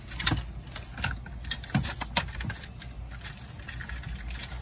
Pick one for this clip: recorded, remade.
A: recorded